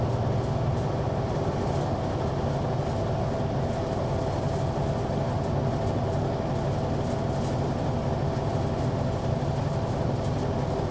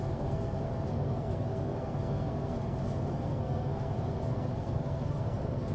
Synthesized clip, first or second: second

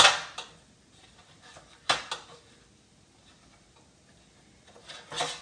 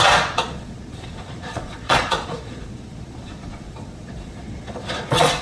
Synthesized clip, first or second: second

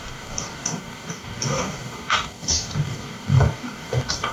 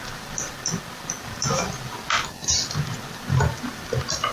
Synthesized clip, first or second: first